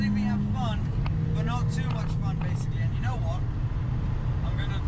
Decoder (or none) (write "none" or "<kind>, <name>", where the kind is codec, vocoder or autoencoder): none